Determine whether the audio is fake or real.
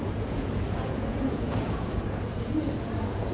fake